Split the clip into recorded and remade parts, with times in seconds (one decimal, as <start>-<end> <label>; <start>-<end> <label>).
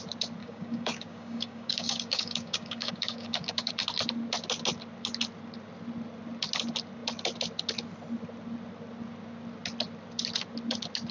0.0-0.4 recorded; 0.4-3.7 remade; 3.7-11.1 recorded